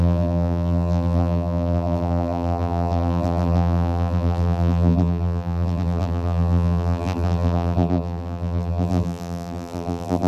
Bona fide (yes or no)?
no